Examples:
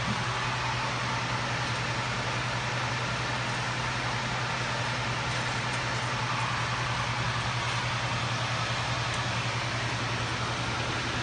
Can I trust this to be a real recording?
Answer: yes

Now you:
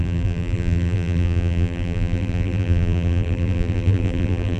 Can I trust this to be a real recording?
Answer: no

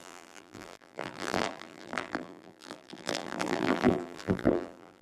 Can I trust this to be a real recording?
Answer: no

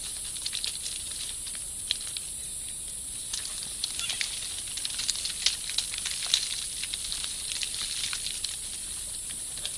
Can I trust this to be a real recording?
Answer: yes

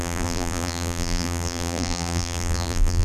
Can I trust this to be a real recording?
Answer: no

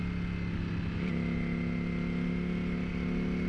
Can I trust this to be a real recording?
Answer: yes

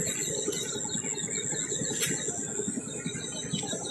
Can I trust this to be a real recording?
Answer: yes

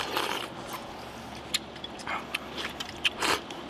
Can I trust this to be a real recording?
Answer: yes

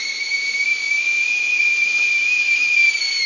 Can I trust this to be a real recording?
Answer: yes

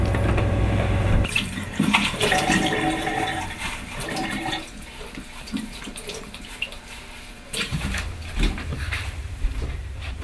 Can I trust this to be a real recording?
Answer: no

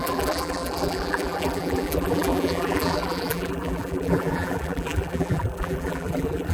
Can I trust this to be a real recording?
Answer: no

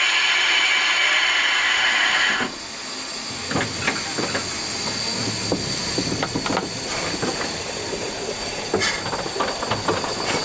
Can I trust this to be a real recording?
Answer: yes